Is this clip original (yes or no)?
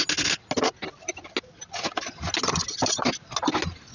yes